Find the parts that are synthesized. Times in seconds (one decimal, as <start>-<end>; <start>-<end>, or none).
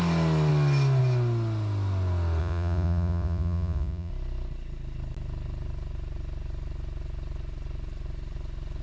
2.4-4.1